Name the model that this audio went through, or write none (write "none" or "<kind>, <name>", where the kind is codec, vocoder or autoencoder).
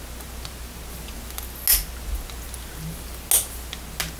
none